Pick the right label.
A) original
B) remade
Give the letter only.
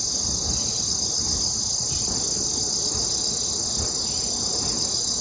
A